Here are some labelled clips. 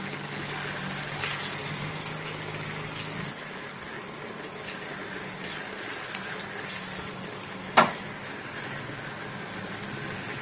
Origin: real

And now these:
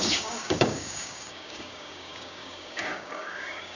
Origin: fake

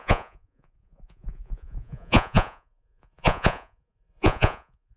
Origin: fake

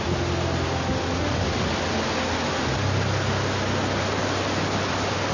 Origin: real